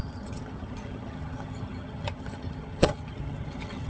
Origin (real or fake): fake